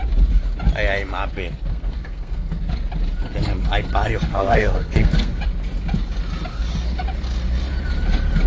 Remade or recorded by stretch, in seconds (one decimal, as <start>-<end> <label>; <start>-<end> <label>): 0.0-1.7 recorded; 1.7-2.7 remade; 2.7-4.3 recorded; 4.3-5.4 remade; 5.4-8.5 recorded